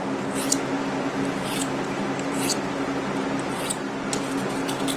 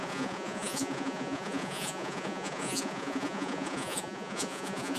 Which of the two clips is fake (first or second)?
second